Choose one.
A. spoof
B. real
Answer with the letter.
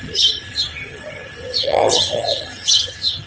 A